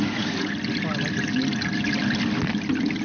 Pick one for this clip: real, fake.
real